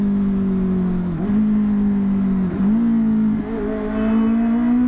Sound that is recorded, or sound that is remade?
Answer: recorded